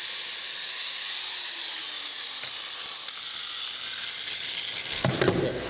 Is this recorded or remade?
recorded